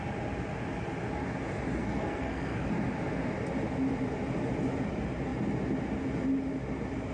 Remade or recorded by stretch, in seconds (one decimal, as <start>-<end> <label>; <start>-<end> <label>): 0.0-1.8 recorded; 1.8-2.7 remade; 2.7-7.1 recorded